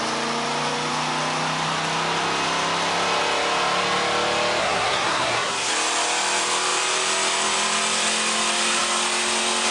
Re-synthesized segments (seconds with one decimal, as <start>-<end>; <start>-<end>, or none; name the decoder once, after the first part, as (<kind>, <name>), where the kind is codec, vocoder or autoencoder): 4.6-5.7 (codec, SNAC)